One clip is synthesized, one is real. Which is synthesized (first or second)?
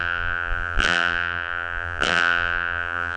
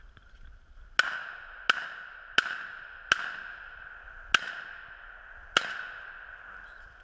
first